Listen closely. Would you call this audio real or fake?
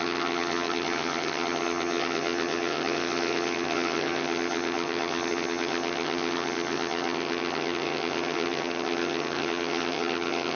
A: fake